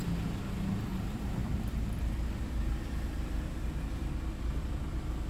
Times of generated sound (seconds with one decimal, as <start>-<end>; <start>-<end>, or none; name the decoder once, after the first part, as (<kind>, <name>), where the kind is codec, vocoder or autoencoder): 0.9-4.1 (vocoder, BigVGAN v2)